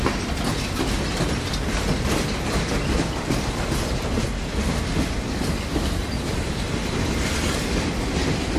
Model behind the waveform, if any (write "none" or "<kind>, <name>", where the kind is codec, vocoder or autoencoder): none